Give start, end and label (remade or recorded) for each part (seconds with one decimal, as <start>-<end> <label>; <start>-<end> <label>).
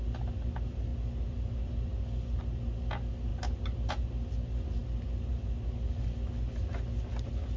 0.0-7.6 recorded